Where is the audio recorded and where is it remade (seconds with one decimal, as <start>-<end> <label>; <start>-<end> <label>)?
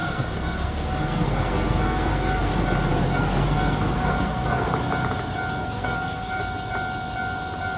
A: 0.0-2.5 remade; 2.5-2.9 recorded; 2.9-4.7 remade; 4.7-5.6 recorded; 5.6-6.4 remade; 6.4-7.8 recorded